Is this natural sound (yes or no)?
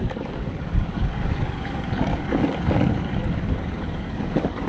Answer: no